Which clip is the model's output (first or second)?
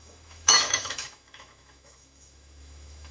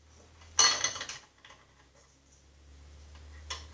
first